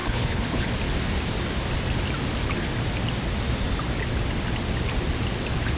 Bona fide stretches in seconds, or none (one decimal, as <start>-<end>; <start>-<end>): 0.7-5.8